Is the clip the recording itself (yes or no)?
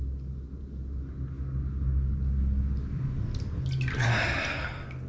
yes